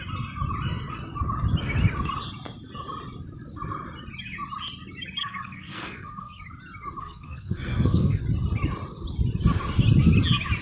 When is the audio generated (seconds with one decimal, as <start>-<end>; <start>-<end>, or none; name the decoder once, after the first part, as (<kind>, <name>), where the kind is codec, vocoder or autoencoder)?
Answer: 5.2-6.4 (codec, SNAC); 7.0-8.2